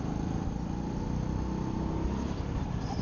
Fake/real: real